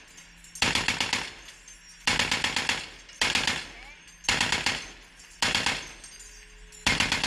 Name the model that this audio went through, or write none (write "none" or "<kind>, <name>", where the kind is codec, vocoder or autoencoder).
none